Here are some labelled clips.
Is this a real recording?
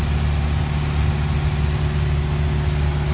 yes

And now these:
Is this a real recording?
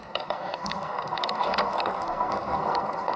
no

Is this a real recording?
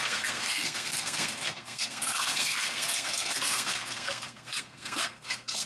no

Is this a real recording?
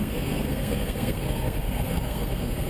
no